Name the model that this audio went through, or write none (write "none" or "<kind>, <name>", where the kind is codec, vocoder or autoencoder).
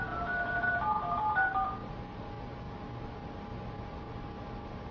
none